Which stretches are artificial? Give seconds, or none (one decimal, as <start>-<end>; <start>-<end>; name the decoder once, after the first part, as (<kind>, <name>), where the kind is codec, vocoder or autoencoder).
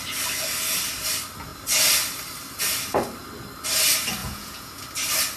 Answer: 4.2-4.8 (vocoder, Vocos)